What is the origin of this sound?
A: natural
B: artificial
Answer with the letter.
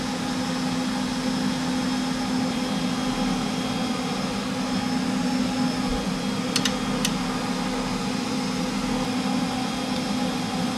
A